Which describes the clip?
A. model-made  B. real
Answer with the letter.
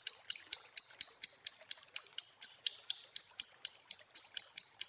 A